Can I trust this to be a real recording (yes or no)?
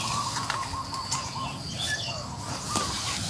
yes